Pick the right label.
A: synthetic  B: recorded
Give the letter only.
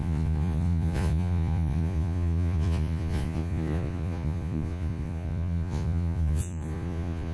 A